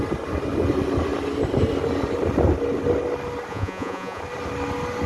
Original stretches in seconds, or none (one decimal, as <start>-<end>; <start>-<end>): 0.0-3.5; 4.2-5.1